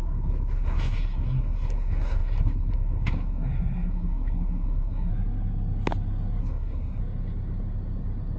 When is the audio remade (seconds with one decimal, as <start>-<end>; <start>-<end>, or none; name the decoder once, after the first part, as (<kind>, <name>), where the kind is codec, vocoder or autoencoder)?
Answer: 0.0-5.1 (codec, SNAC); 6.4-7.0